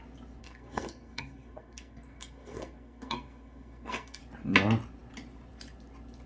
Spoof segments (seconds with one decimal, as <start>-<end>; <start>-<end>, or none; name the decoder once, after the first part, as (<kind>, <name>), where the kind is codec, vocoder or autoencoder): 0.4-4.2 (codec, SNAC)